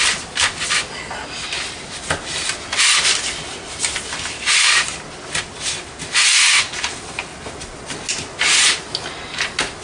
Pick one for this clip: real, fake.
real